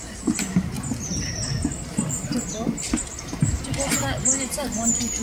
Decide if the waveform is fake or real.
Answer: real